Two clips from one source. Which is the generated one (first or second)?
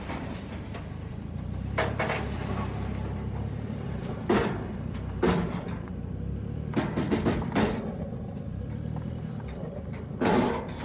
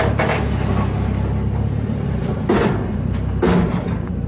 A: first